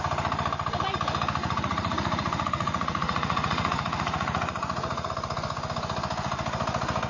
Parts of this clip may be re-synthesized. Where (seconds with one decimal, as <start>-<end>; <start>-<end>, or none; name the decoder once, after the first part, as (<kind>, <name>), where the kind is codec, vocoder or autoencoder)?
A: 1.4-5.1 (vocoder, Vocos)